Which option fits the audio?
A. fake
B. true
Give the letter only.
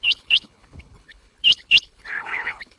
A